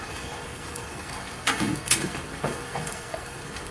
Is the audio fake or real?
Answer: fake